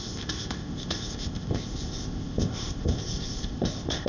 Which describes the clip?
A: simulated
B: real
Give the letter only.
A